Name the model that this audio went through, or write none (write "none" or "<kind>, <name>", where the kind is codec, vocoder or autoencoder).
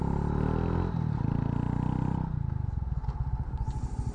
none